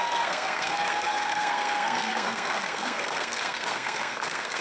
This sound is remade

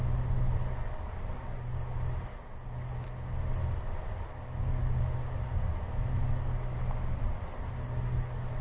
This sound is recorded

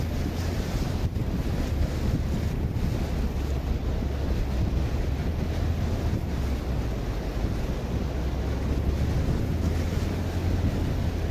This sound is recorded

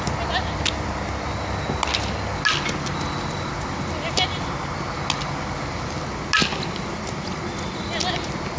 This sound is recorded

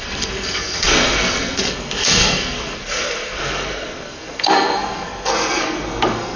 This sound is remade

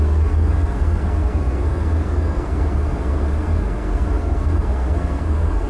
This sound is remade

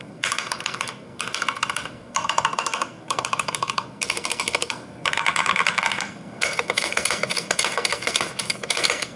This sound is remade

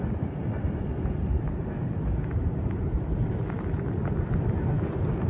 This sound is recorded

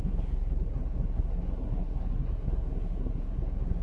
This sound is remade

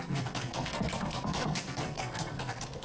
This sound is remade